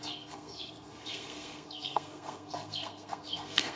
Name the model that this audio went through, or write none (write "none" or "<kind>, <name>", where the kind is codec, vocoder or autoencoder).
codec, SNAC